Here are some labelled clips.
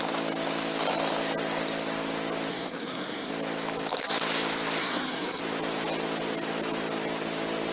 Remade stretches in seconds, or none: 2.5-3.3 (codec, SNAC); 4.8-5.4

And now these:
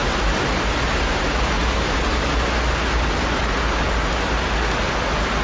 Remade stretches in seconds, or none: none